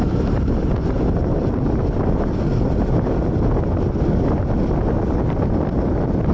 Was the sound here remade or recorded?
recorded